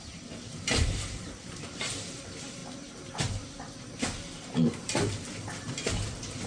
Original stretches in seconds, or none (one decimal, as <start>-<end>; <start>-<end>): 2.6-4.7